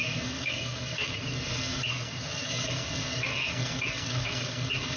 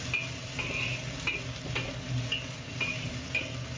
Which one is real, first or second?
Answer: second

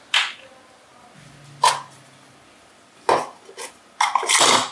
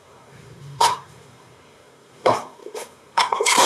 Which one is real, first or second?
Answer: first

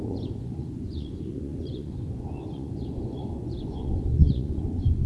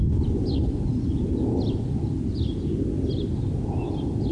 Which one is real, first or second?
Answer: second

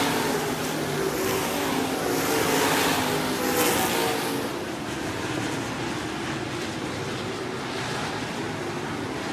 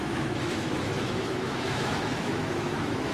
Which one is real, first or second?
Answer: first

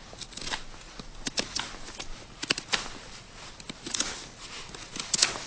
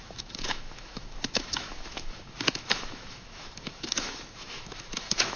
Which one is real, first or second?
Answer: first